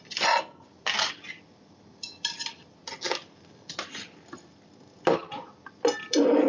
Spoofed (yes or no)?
no